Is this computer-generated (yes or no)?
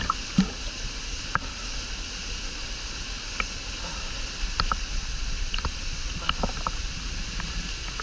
no